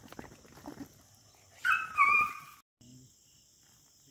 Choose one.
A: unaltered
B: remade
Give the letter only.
A